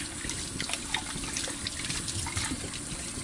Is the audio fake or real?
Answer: real